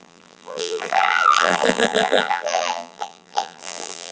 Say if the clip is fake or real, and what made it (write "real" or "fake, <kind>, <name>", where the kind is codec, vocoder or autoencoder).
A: fake, vocoder, BigVGAN v2